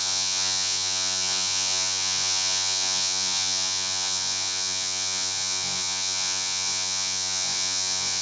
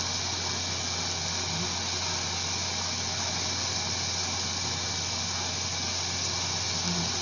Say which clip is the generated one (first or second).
first